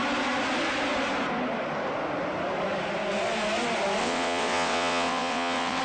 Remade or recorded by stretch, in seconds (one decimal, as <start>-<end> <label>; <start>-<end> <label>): 0.0-4.0 recorded; 4.0-5.8 remade

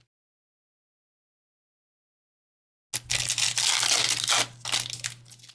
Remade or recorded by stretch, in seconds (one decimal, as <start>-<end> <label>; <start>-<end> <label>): 0.0-5.5 recorded

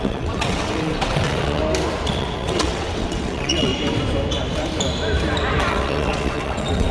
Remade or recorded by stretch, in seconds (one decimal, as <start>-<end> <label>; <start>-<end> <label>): 0.0-1.6 remade; 1.6-2.1 recorded; 2.1-3.7 remade; 3.7-5.7 recorded; 5.7-6.9 remade

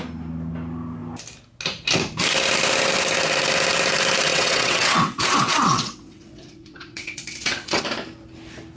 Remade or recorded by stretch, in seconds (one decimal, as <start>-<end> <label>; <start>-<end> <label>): 0.0-4.3 recorded; 4.3-7.8 remade; 7.8-8.8 recorded